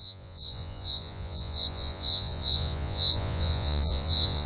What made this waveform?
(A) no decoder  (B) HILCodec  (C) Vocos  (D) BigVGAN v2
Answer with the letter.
C